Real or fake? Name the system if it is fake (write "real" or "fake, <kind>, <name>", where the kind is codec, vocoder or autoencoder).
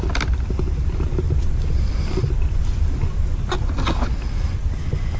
real